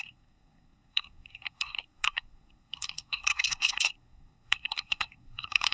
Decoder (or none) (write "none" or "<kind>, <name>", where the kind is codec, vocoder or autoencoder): codec, SNAC